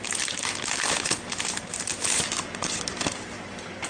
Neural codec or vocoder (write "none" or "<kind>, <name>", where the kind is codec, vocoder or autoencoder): vocoder, BigVGAN v2